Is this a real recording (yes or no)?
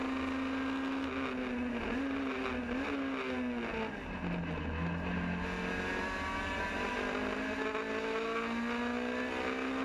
yes